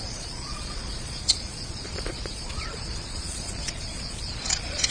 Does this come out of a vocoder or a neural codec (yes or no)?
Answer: yes